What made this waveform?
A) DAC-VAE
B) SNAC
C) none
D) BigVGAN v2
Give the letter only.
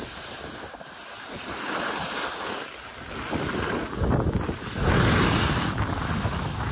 C